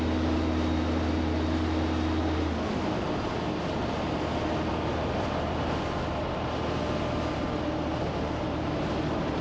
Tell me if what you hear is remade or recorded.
recorded